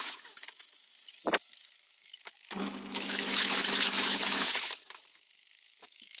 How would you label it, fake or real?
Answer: fake